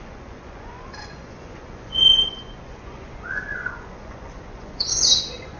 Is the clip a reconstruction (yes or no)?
yes